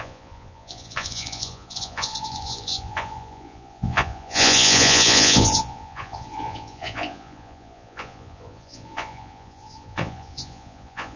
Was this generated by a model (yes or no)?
yes